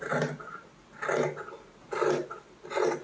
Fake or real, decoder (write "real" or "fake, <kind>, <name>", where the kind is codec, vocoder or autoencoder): real